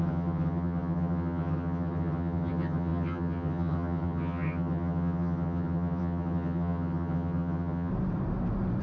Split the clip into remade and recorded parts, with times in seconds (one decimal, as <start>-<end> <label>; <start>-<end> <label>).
0.0-7.9 remade; 7.9-8.8 recorded